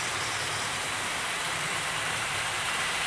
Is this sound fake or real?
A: fake